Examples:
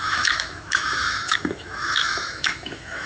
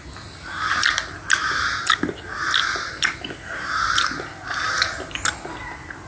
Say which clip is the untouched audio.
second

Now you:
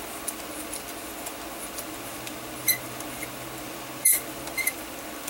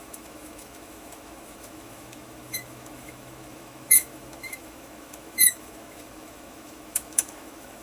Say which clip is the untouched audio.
first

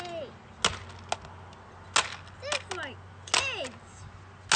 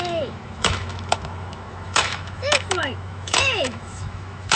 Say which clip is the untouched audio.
first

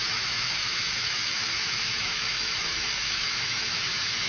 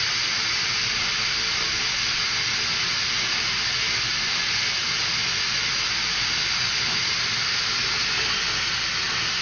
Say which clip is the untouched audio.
second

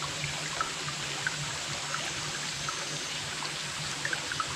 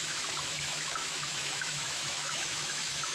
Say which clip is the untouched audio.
first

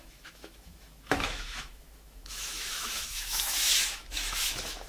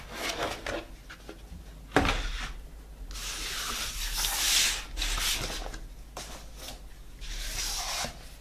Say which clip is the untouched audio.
second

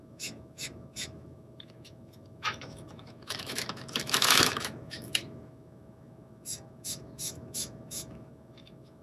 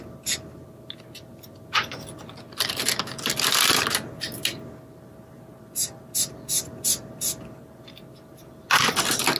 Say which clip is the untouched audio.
second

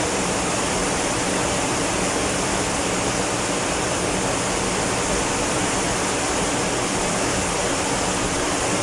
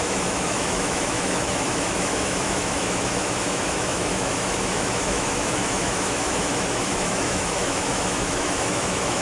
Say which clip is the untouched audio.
first